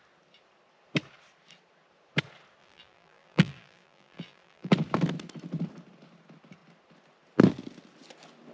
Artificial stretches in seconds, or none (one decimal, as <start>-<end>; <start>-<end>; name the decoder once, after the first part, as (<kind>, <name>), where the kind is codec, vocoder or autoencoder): 2.6-4.7 (vocoder, BigVGAN v2)